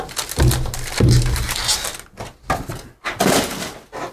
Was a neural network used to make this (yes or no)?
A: no